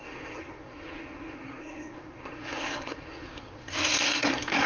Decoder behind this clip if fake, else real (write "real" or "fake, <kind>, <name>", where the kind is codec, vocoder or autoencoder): fake, codec, SNAC